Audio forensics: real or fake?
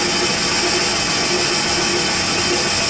real